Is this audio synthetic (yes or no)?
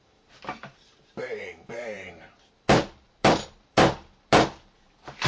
yes